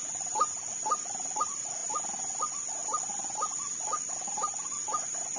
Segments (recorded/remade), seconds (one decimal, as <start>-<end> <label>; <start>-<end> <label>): 0.0-1.8 remade; 1.8-2.4 recorded; 2.4-2.8 remade; 2.8-3.4 recorded; 3.4-5.4 remade